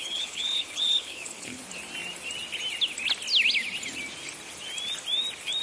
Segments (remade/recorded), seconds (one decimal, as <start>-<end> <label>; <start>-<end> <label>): 0.0-1.6 remade; 1.6-5.6 recorded